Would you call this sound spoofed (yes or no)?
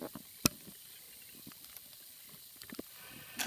no